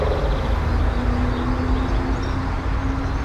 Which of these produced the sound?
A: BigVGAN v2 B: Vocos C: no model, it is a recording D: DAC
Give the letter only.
C